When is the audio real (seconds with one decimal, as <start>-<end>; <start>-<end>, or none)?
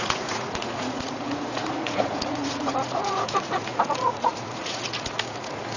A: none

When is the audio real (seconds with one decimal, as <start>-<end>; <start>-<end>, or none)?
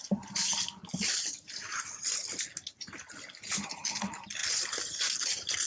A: 0.0-5.7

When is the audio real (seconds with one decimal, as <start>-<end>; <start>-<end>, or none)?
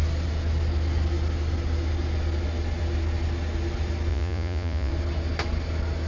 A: 0.0-4.1; 4.9-6.1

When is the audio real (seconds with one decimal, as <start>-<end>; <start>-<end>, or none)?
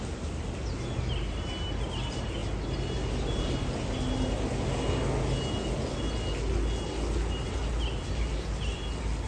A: 0.0-9.3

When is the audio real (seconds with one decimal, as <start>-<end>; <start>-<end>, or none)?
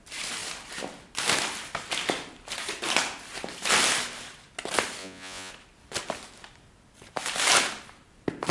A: 0.0-5.0; 5.5-8.5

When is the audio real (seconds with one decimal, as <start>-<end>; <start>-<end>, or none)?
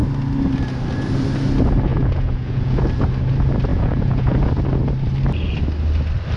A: 0.0-1.9; 2.8-3.7; 4.5-6.4